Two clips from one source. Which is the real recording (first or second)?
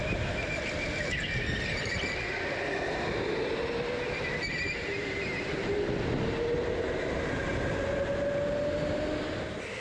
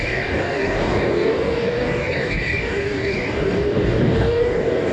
first